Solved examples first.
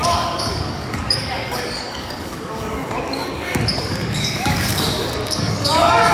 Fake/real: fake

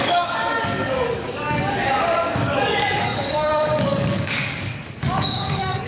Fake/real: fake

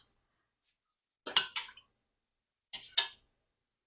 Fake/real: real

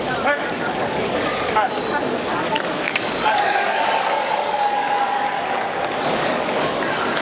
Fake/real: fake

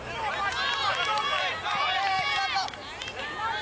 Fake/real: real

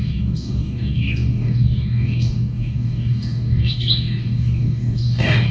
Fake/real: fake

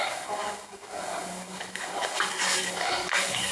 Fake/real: fake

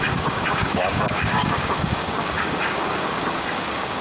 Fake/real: fake